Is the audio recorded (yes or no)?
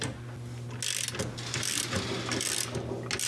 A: yes